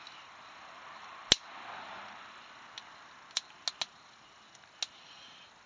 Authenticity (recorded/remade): recorded